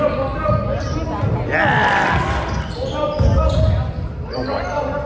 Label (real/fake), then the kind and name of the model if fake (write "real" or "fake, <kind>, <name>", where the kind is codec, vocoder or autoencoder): real